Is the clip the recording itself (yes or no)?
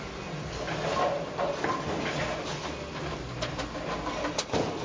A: yes